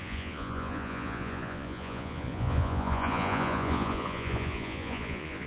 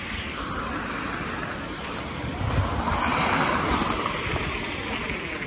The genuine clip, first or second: second